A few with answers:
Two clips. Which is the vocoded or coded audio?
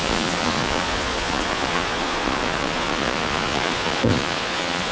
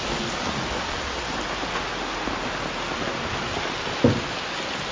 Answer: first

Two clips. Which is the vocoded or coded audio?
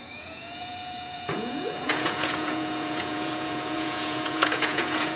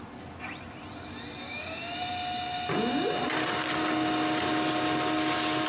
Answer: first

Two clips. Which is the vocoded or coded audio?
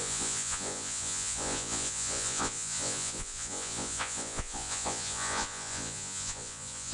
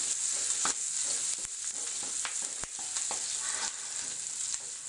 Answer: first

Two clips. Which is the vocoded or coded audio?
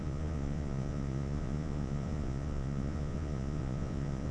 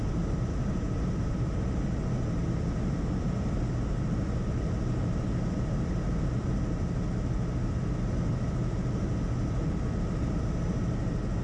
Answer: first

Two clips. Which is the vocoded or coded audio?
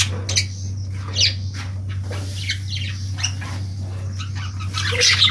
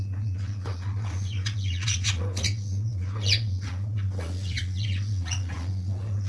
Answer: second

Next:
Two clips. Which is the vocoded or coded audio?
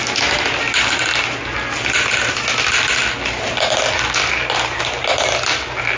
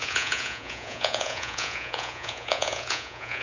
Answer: second